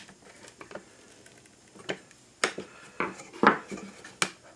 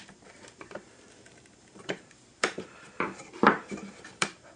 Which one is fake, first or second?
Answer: second